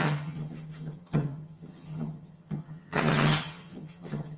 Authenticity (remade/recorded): remade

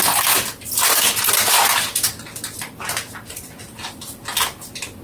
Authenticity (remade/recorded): recorded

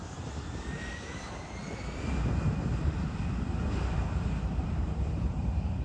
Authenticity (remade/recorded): remade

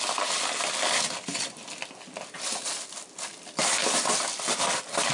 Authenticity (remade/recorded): recorded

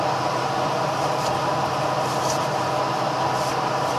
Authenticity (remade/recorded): recorded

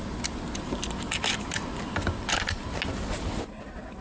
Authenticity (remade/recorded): recorded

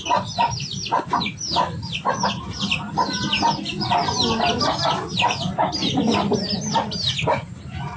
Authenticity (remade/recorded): recorded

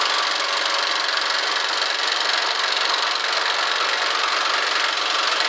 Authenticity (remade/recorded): recorded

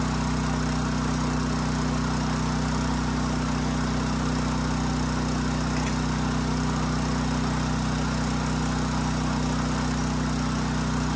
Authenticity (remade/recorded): recorded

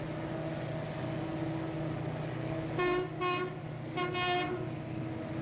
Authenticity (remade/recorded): recorded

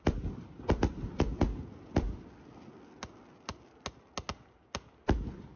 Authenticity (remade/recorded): recorded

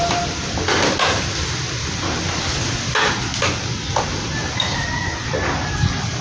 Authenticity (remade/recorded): recorded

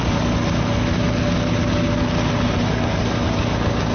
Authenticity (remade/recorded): recorded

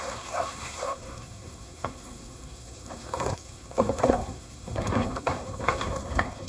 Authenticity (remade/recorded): remade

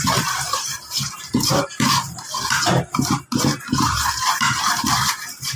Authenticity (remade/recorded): remade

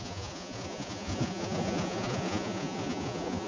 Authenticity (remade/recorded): remade